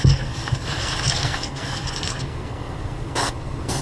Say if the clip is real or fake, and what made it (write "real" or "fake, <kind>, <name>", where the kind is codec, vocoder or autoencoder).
fake, codec, SNAC